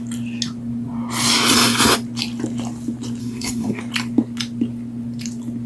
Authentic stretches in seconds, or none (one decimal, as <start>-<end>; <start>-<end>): 0.0-3.2; 3.8-5.7